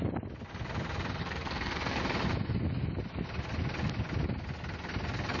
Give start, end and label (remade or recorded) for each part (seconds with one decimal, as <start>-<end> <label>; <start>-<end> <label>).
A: 0.0-1.2 recorded; 1.2-2.0 remade; 2.0-5.4 recorded